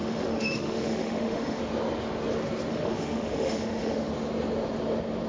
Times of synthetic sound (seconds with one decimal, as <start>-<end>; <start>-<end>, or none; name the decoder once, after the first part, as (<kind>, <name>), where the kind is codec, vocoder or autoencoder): 0.0-1.6 (autoencoder, DAC-VAE); 2.7-4.1